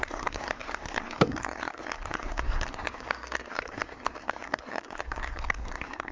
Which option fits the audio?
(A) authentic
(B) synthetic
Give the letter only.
B